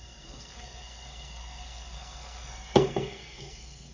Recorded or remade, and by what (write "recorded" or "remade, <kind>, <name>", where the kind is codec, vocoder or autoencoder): remade, codec, SNAC